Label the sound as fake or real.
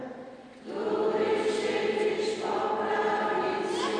real